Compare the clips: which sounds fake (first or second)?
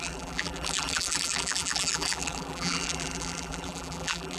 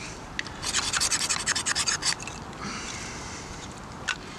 first